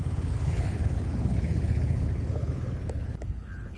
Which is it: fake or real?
fake